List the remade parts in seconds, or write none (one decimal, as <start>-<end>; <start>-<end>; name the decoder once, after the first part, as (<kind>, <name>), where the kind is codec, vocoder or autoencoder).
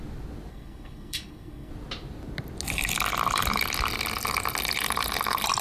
0.5-1.7 (codec, SNAC)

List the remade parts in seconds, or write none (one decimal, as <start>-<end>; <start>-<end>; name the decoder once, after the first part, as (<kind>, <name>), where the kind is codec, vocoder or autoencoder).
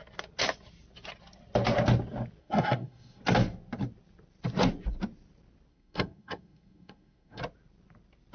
2.4-3.2 (codec, SNAC); 5.7-7.4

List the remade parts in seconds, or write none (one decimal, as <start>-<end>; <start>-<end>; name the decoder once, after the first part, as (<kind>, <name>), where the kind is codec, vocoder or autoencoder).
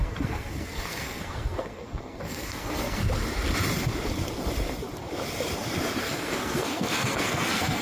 0.0-3.0 (codec, SNAC); 6.0-7.8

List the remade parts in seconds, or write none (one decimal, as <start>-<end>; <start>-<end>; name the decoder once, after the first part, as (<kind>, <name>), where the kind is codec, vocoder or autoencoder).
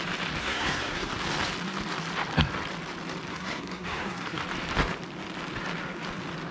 0.4-1.1 (codec, SNAC); 3.3-4.4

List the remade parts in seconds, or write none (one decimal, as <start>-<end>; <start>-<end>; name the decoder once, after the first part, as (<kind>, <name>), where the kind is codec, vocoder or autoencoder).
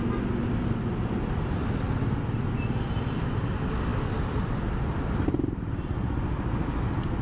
none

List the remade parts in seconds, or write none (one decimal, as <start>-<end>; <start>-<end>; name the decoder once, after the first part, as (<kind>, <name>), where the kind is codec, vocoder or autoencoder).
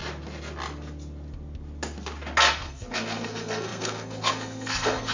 2.5-5.1 (codec, SNAC)